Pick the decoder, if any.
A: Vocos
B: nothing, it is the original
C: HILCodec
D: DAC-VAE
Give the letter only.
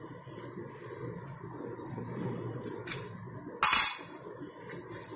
B